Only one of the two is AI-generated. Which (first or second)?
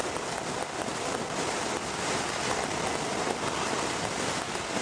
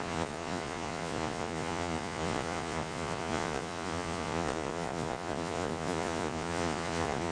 second